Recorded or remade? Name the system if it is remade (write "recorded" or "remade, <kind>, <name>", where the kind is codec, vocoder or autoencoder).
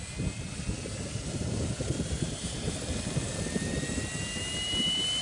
recorded